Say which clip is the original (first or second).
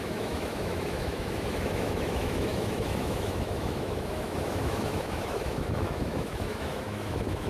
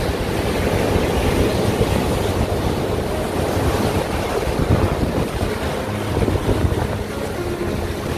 second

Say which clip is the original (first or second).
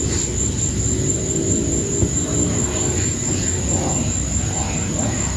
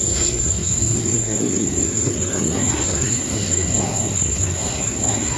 first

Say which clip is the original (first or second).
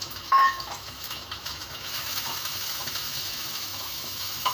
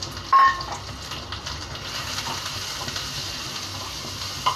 second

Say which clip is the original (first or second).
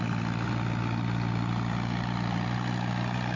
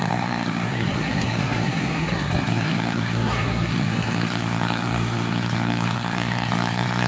first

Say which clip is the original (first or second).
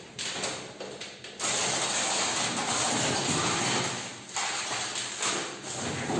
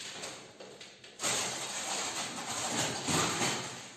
first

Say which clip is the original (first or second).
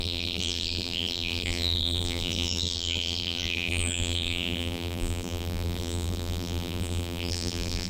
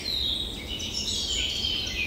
second